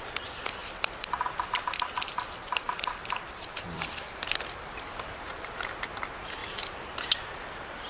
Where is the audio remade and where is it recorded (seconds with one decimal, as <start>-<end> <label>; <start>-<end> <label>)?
0.0-7.9 remade